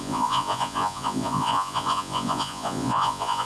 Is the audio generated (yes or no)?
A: yes